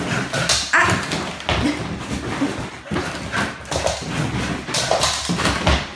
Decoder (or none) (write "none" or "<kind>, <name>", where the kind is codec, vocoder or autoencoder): none